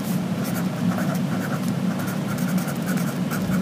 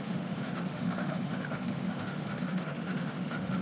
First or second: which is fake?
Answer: second